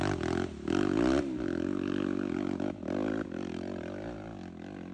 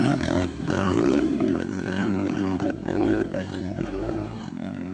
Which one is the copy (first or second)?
second